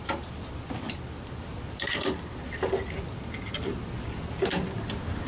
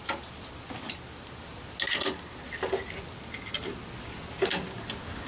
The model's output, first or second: first